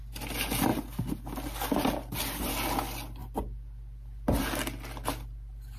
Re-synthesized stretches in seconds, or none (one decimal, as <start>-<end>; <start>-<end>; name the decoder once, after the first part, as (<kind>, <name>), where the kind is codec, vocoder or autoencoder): none